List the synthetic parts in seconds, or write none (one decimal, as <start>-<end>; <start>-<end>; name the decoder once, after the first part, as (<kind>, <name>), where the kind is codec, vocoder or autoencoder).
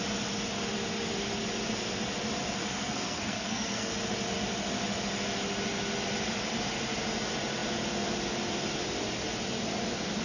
2.6-3.9 (codec, SNAC)